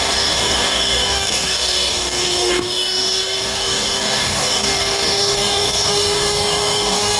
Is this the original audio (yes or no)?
no